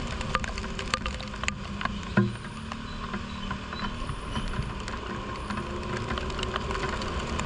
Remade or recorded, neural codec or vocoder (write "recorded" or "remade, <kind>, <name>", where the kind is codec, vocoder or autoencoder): recorded